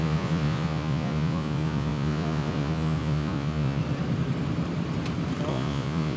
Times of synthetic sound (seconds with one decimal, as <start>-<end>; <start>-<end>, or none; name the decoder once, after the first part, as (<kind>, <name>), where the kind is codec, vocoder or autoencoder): 0.0-3.8 (vocoder, Vocos); 5.5-6.2